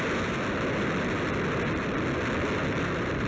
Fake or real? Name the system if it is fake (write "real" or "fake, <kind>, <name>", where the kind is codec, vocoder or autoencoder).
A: real